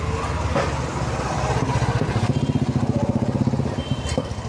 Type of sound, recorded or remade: recorded